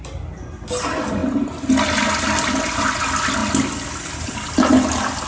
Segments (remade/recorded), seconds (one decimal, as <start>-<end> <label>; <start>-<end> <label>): 0.0-5.3 recorded